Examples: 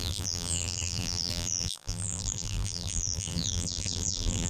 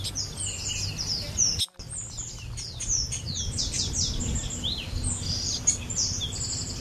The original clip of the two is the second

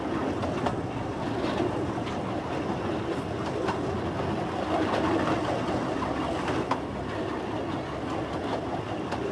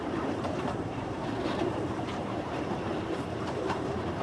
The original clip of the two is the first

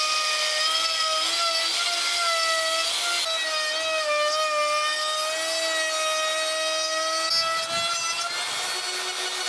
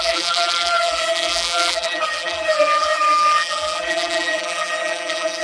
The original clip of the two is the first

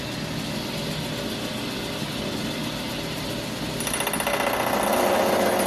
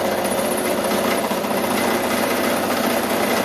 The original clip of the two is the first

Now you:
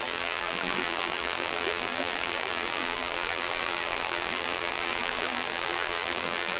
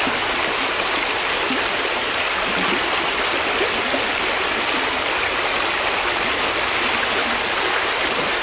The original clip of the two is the second